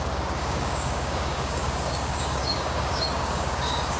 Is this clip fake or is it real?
fake